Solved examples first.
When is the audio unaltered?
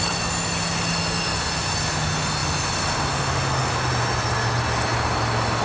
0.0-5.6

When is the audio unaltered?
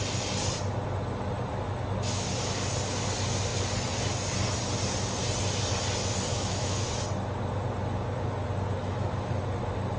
0.0-6.3; 6.9-8.8; 9.4-10.0